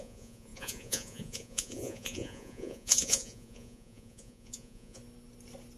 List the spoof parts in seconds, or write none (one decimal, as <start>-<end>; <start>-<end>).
0.0-5.0